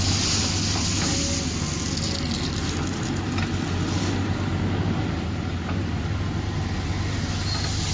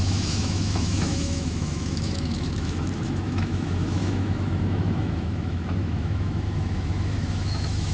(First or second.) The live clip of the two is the first